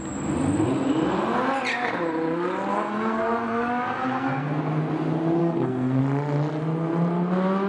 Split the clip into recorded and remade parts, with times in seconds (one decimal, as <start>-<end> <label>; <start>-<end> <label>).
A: 0.0-2.7 recorded; 2.7-4.6 remade; 4.6-5.4 recorded; 5.4-6.0 remade; 6.0-7.7 recorded